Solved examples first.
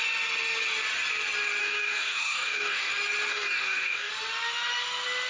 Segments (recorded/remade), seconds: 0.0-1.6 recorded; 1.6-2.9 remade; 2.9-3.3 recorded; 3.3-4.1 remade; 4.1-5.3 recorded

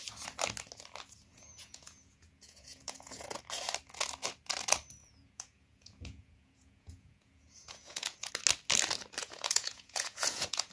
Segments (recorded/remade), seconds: 0.0-1.3 recorded; 1.3-3.4 remade; 3.4-5.0 recorded; 5.0-8.3 remade; 8.3-9.2 recorded; 9.2-10.7 remade

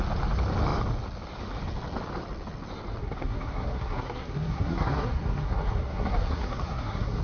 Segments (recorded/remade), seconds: 0.0-3.0 recorded; 3.0-7.2 remade

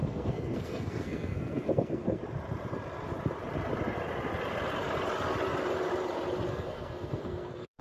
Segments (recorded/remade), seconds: 0.0-2.2 remade; 2.2-6.5 recorded; 6.5-7.8 remade

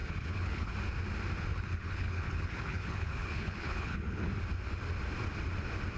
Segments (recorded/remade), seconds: 0.0-0.7 remade; 0.7-1.5 recorded; 1.5-4.3 remade; 4.3-6.0 recorded

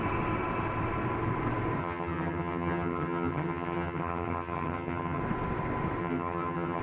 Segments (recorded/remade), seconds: 0.0-1.8 recorded; 1.8-5.2 remade; 5.2-6.0 recorded; 6.0-6.8 remade

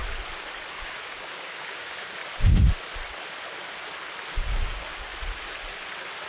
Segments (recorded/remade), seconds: 0.0-0.7 recorded; 0.7-2.2 remade; 2.2-4.3 recorded; 4.3-5.1 remade; 5.1-6.3 recorded

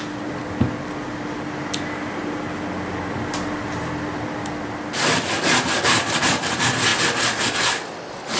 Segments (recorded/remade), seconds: 0.0-8.4 recorded